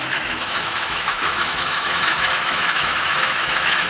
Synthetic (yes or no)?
yes